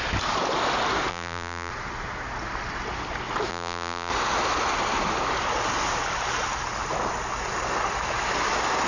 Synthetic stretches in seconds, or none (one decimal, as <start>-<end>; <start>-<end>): 1.1-1.7; 3.5-4.1